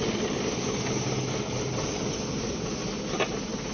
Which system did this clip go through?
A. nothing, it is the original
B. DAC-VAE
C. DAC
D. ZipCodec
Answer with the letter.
A